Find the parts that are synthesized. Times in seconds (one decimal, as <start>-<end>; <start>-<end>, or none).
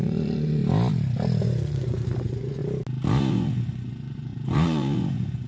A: 0.0-0.6; 1.4-2.6; 3.3-5.5